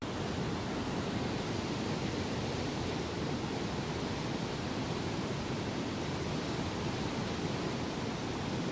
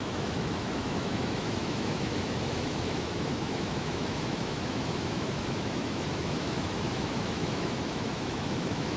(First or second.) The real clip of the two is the first